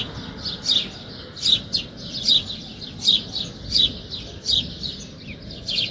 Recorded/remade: recorded